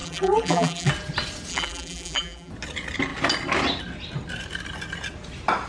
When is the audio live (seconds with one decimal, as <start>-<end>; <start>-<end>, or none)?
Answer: 0.9-1.5; 2.5-5.7